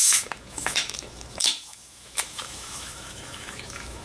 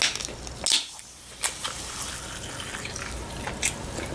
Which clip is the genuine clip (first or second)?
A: second